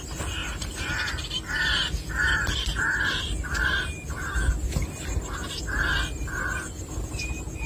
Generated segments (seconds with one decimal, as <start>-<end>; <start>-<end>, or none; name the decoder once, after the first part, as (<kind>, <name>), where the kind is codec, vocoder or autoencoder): none